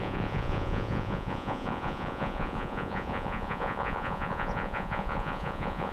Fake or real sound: fake